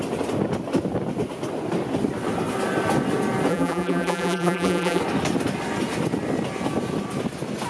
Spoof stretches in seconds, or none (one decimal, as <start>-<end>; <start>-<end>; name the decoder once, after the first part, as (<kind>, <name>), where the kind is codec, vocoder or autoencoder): 3.5-5.0 (vocoder, BigVGAN v2)